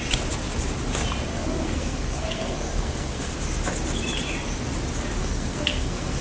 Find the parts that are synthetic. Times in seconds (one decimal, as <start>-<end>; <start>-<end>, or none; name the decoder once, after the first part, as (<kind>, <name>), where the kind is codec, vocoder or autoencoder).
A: 1.3-3.3 (codec, SNAC); 5.2-6.2